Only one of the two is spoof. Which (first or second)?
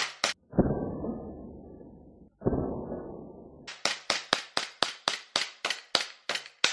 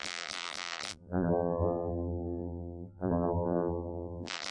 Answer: second